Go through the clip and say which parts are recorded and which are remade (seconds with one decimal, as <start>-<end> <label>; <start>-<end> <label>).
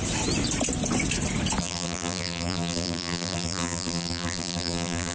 0.0-1.6 recorded; 1.6-5.1 remade